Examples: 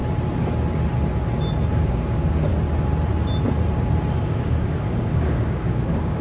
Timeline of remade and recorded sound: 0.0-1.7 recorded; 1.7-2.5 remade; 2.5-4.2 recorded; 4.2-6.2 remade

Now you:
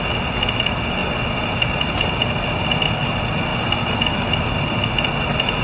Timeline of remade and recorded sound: 0.0-5.6 recorded